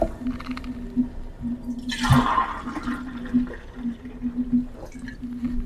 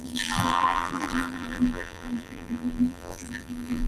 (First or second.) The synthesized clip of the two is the second